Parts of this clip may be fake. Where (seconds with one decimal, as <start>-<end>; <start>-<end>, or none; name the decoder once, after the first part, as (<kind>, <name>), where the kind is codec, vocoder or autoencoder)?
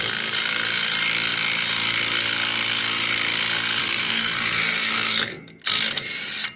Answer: 3.8-5.6 (codec, SNAC)